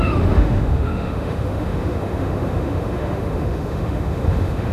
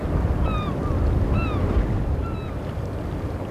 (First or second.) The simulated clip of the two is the first